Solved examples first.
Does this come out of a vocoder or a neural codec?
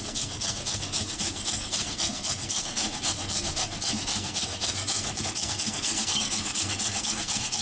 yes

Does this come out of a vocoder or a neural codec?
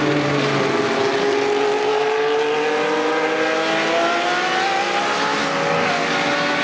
no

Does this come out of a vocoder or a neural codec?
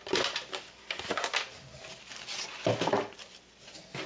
no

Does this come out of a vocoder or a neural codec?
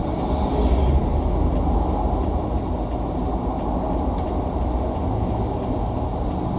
no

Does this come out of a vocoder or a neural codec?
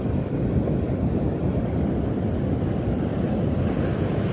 no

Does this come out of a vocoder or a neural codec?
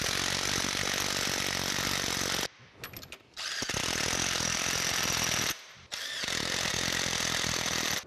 no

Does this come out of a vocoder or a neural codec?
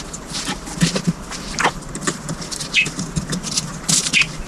yes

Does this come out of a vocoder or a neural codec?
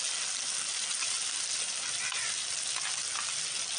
no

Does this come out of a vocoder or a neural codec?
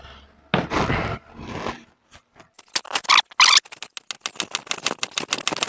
no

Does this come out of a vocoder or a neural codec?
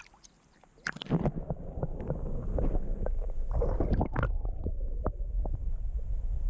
no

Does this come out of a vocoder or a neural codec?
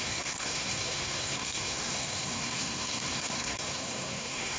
yes